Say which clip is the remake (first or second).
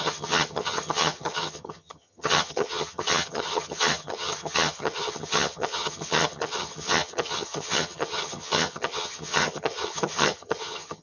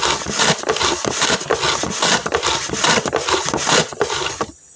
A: first